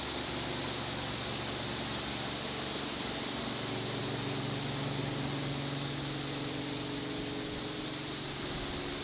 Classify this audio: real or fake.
real